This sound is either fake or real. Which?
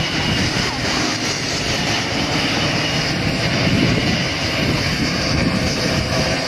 fake